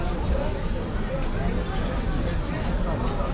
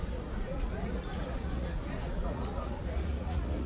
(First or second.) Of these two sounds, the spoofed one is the second